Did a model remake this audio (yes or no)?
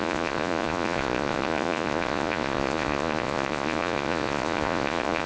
yes